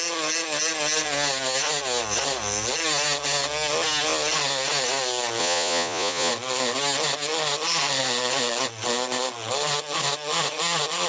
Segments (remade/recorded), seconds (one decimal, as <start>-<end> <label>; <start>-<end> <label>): 0.0-5.4 recorded; 5.4-6.3 remade; 6.3-11.1 recorded

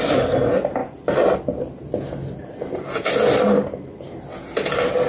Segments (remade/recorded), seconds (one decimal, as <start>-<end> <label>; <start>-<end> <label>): 0.0-5.1 recorded